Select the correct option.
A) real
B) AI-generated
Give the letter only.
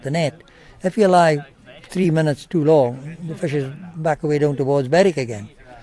B